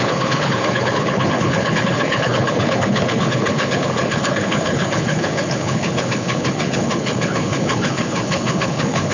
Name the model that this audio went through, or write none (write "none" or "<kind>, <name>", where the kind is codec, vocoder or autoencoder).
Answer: codec, HILCodec